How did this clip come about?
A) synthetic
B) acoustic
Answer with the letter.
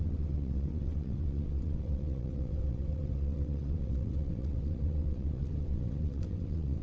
A